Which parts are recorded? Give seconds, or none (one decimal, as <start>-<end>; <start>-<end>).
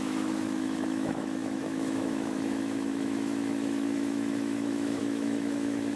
none